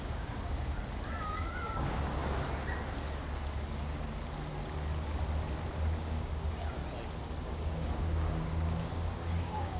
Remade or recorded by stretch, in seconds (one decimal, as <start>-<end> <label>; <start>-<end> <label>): 0.0-0.7 remade; 0.7-1.4 recorded; 1.4-2.2 remade; 2.2-6.0 recorded; 6.0-6.8 remade; 6.8-7.4 recorded; 7.4-9.8 remade